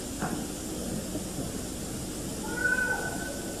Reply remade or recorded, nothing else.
recorded